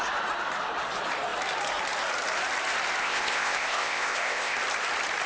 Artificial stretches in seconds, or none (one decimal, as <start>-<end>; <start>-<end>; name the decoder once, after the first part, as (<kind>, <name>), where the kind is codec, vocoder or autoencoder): 3.0-4.6 (codec, ZipCodec)